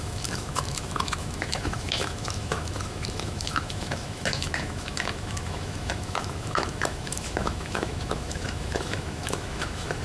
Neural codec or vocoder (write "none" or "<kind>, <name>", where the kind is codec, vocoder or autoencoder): autoencoder, DAC-VAE